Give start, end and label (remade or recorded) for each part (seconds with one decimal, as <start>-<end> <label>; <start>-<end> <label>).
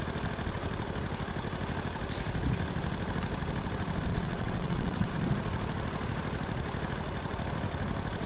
0.0-4.1 recorded; 4.1-5.1 remade; 5.1-8.3 recorded